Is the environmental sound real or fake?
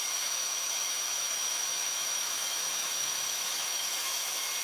fake